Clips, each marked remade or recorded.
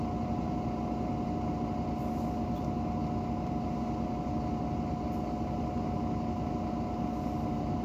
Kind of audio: recorded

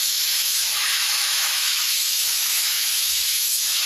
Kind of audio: remade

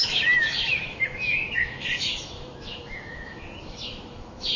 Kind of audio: remade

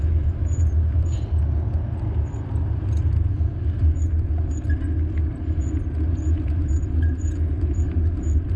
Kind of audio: recorded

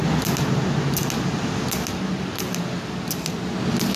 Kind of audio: recorded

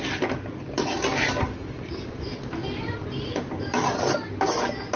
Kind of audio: recorded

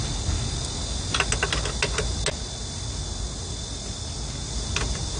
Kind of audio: recorded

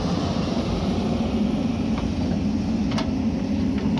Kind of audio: recorded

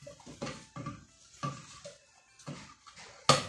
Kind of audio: recorded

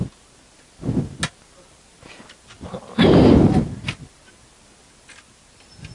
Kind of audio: recorded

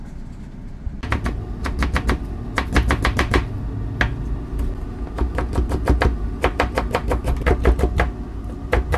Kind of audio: recorded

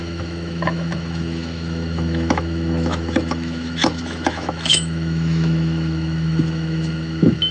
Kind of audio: remade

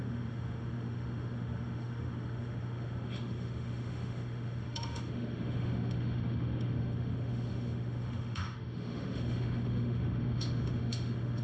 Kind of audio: remade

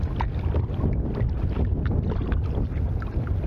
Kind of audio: recorded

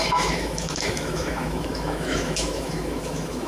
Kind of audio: remade